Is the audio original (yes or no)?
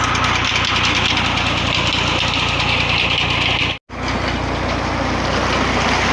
yes